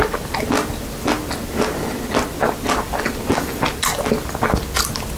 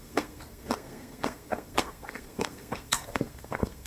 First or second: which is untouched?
first